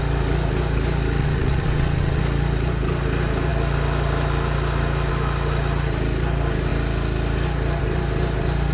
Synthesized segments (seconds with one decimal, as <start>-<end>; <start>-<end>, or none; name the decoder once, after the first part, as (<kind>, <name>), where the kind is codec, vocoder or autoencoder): 1.2-2.2 (vocoder, WaveNeXt)